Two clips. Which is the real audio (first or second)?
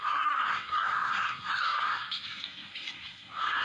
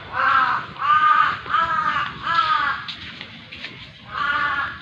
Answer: second